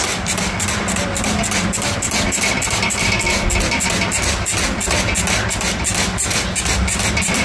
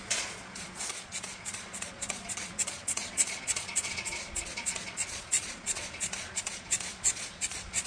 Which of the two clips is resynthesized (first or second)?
second